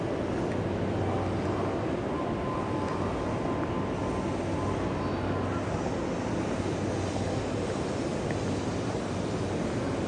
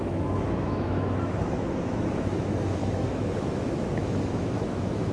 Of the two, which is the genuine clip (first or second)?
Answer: first